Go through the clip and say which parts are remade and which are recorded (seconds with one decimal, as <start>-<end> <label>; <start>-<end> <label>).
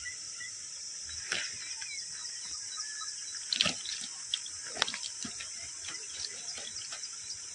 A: 0.0-7.5 recorded